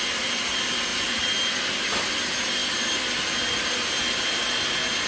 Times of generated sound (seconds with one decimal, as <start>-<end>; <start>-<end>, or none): none